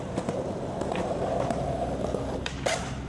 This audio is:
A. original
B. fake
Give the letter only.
A